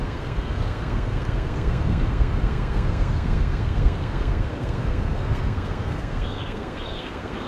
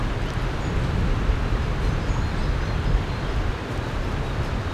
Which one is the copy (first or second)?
first